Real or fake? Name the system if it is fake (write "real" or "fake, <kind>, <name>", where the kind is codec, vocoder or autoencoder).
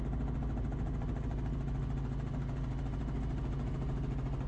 real